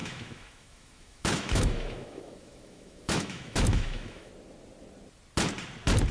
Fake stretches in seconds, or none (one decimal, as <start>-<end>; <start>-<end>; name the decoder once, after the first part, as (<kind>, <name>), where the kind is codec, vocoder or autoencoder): 0.0-4.3 (autoencoder, DAC-VAE)